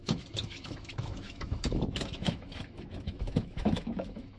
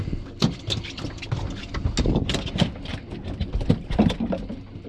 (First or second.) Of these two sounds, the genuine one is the second